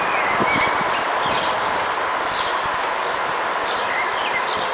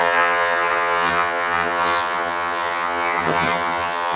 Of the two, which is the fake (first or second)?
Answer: second